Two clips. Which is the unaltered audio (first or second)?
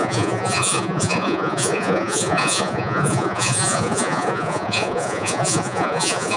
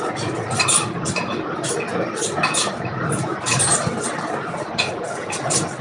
second